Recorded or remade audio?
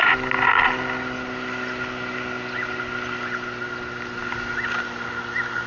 recorded